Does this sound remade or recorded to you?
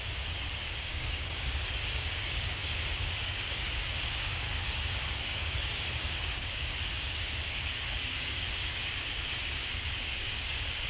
remade